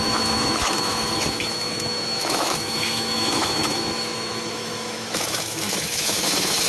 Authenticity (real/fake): fake